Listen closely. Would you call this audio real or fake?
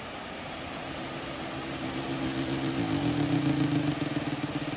real